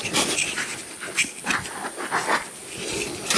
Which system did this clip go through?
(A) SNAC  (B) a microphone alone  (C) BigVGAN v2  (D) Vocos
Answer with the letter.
B